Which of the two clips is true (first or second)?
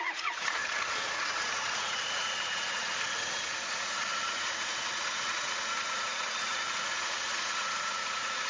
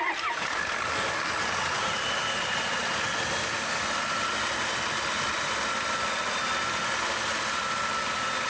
second